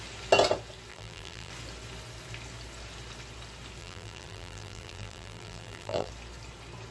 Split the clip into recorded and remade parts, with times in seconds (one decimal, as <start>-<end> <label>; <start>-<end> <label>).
0.0-0.9 recorded; 0.9-1.5 remade; 1.5-3.8 recorded; 3.8-6.1 remade; 6.1-6.9 recorded